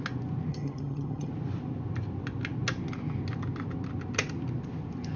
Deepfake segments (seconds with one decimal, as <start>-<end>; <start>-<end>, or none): 0.5-1.3